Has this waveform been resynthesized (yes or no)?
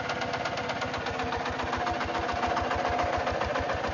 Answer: no